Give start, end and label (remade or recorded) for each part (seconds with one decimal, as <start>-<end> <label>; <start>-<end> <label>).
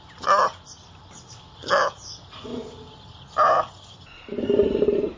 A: 0.0-5.2 recorded